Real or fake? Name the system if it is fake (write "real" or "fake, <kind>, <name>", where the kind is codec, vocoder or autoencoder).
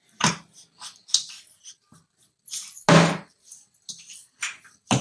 real